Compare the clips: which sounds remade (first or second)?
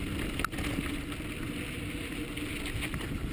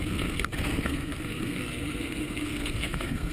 second